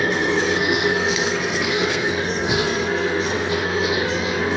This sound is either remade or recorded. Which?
remade